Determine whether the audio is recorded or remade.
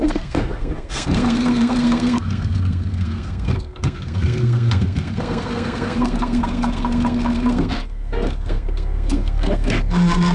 remade